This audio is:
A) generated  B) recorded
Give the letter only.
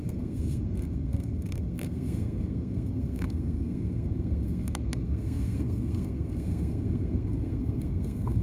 A